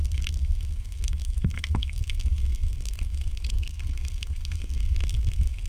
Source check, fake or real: fake